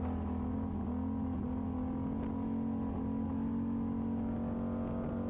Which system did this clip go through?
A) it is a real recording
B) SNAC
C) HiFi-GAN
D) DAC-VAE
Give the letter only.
A